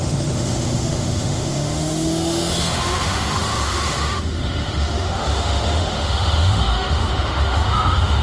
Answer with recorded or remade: remade